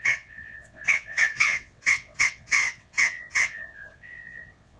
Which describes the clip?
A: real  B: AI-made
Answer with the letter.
B